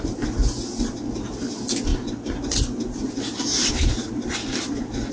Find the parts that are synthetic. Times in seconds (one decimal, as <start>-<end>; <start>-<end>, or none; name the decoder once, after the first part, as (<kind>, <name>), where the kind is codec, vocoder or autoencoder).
none